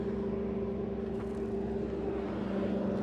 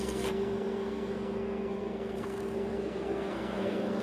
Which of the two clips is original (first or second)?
first